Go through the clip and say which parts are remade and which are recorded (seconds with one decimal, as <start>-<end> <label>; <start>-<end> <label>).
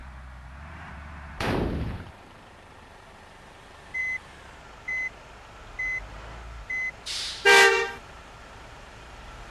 0.0-4.0 remade; 4.0-7.1 recorded; 7.1-9.5 remade